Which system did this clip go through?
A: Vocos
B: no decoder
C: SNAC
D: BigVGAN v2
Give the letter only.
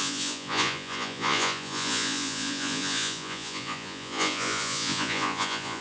A